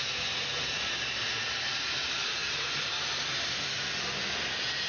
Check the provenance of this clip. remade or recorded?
recorded